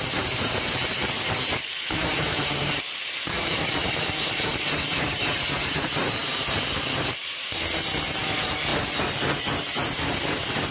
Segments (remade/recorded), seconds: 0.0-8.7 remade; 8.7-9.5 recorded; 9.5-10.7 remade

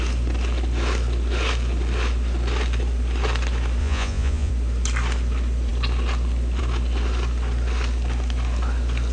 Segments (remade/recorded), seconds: 0.0-3.8 recorded; 3.8-4.5 remade; 4.5-9.1 recorded